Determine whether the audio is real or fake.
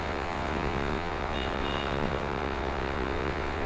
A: fake